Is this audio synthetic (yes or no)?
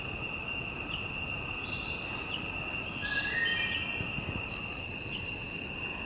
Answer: no